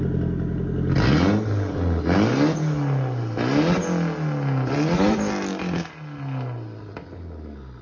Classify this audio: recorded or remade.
recorded